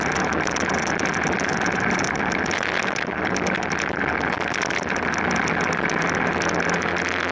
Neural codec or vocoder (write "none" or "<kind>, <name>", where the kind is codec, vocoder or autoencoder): none